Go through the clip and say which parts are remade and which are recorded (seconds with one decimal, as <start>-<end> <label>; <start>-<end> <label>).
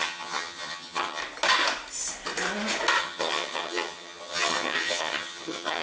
0.0-1.2 remade; 1.2-3.0 recorded; 3.0-5.8 remade